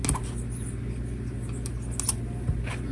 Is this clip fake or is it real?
real